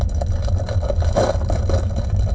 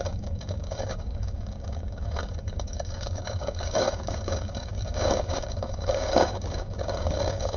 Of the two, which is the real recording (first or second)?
first